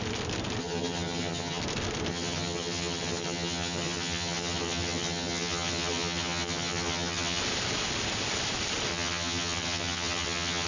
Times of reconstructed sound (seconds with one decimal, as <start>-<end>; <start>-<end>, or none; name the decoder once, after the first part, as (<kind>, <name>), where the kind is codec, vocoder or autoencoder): 0.6-1.6 (vocoder, HiFi-GAN); 2.1-7.4; 8.9-10.7

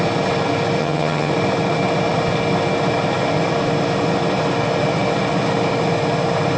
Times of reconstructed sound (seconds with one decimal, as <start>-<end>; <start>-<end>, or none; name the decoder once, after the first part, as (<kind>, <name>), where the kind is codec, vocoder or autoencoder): 0.8-1.3 (vocoder, HiFi-GAN)

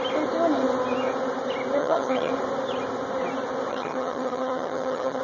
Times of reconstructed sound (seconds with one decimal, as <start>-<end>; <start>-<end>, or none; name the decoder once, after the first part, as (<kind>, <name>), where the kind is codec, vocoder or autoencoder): 1.8-2.3 (vocoder, HiFi-GAN); 3.7-5.2